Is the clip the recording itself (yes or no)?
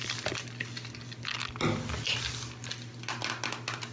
yes